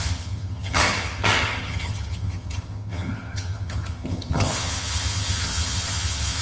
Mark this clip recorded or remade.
remade